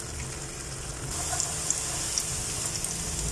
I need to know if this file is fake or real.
real